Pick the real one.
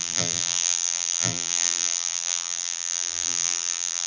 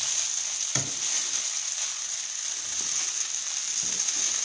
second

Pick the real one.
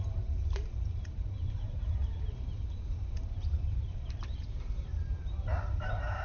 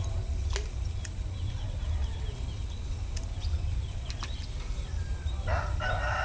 second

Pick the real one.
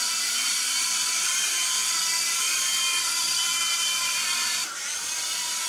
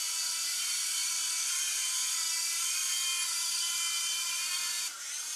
second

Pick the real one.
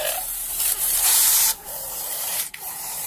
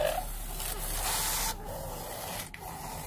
second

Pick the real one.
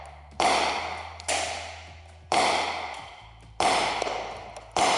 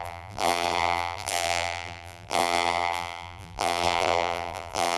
first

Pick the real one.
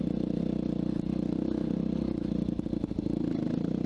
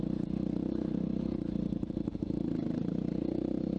first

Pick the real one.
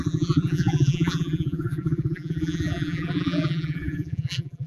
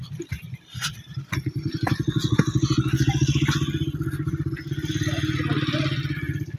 second